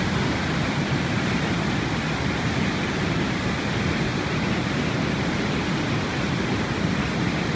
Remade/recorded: recorded